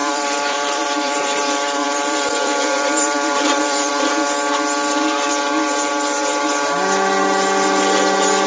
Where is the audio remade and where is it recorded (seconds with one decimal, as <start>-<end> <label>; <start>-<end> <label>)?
0.0-3.9 remade; 3.9-8.5 recorded